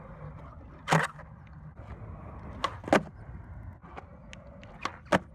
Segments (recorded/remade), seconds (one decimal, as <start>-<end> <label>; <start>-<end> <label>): 0.0-5.3 recorded

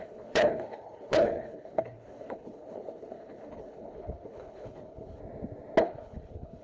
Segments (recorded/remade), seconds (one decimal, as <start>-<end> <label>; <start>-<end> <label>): 0.0-5.2 remade; 5.2-5.8 recorded; 5.8-6.6 remade

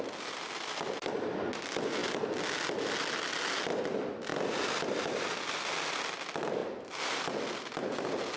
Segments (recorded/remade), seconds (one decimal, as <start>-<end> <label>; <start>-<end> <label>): 0.0-8.4 recorded

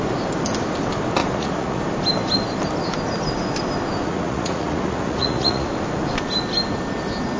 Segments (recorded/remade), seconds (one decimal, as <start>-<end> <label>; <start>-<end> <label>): 0.0-1.2 recorded; 1.2-1.8 remade; 1.8-4.0 recorded; 4.0-5.7 remade; 5.7-7.4 recorded